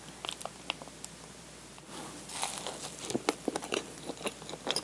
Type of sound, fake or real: real